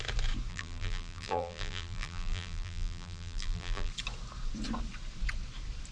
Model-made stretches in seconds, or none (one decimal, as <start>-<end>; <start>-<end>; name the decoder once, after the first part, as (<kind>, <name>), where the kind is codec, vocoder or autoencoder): 0.5-3.9 (vocoder, BigVGAN v2)